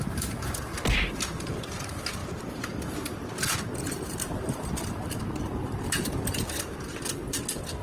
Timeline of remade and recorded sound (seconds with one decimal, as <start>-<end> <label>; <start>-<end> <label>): 0.0-7.8 remade